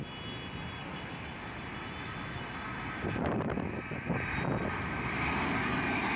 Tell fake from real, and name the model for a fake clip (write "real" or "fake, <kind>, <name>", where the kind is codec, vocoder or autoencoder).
real